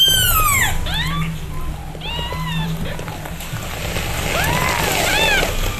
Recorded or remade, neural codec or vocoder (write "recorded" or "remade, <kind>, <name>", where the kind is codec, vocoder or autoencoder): recorded